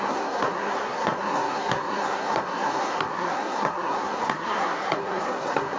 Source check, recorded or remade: remade